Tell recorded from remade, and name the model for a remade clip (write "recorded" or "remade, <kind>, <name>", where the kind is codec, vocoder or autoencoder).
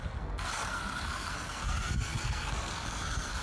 remade, codec, SNAC